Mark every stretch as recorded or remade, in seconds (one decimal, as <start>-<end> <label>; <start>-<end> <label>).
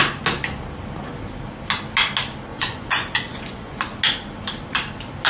0.0-2.5 recorded; 2.5-3.8 remade; 3.8-5.3 recorded